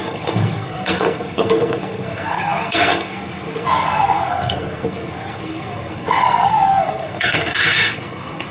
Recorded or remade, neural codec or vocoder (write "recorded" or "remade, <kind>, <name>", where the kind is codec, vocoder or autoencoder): remade, codec, SNAC